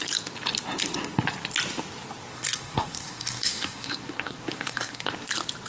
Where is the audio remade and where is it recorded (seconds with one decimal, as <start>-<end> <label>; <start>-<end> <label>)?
0.0-2.3 recorded; 2.3-5.1 remade; 5.1-5.7 recorded